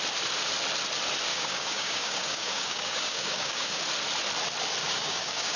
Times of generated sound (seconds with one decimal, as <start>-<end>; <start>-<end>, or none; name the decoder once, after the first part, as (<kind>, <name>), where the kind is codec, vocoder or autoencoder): 1.3-3.8 (codec, DAC); 4.8-5.6